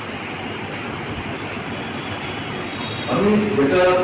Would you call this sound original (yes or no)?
yes